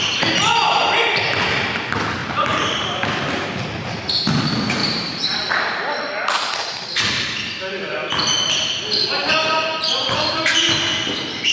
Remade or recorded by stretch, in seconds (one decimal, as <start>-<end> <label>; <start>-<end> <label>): 0.0-2.2 recorded; 2.2-3.5 remade; 3.5-4.8 recorded; 4.8-5.5 remade; 5.5-9.4 recorded; 9.4-10.4 remade; 10.4-11.5 recorded